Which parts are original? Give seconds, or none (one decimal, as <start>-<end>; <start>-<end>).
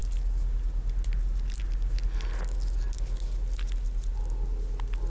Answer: 0.0-5.1